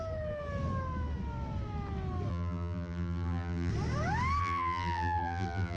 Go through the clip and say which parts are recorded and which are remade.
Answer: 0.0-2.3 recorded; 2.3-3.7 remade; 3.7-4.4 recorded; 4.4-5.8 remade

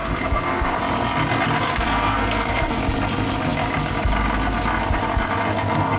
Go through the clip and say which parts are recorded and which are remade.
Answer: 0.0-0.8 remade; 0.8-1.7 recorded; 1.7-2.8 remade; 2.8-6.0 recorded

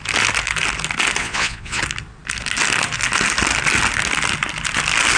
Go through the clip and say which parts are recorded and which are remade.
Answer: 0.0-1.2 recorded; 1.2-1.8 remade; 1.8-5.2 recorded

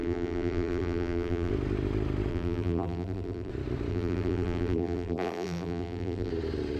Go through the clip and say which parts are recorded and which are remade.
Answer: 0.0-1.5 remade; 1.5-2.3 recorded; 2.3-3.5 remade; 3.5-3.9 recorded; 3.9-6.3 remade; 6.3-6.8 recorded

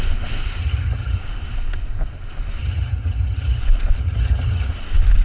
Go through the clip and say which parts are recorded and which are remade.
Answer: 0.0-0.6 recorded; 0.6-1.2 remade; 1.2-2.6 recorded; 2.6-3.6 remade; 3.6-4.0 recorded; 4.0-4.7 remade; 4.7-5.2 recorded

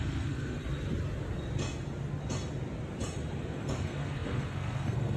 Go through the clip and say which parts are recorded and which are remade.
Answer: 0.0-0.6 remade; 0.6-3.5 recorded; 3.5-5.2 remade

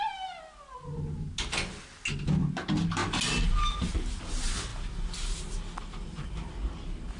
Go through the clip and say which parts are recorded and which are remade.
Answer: 0.0-7.2 recorded